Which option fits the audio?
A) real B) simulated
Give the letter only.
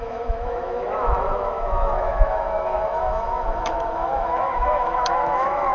B